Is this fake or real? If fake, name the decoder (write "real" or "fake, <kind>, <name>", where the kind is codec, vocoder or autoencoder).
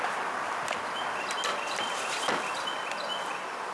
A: real